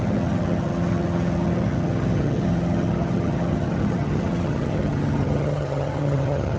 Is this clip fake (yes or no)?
yes